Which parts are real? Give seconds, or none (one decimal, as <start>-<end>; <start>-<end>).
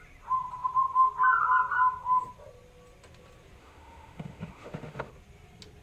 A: 0.0-3.6; 5.1-5.8